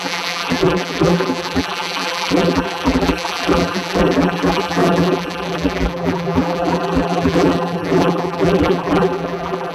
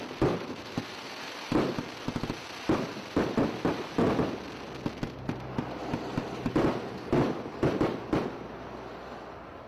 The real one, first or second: second